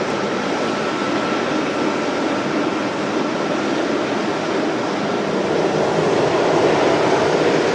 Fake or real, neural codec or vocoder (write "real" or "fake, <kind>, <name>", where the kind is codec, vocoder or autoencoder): fake, vocoder, BigVGAN v2